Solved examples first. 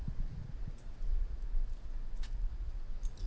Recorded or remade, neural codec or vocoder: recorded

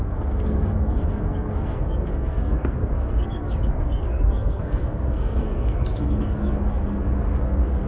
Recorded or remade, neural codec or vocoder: remade, codec, SNAC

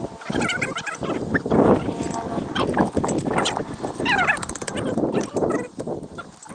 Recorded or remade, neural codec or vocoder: recorded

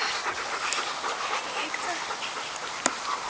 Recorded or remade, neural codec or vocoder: recorded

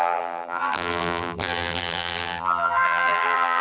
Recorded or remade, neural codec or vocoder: remade, vocoder, BigVGAN v2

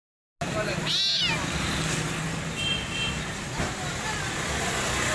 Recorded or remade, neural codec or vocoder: recorded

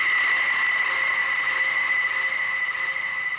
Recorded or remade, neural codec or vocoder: recorded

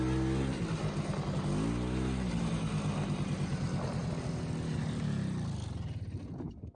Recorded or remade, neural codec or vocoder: recorded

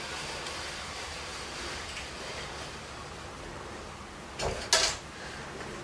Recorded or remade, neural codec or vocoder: recorded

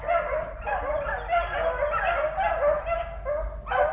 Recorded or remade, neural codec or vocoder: recorded